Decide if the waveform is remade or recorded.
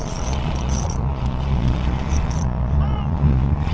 remade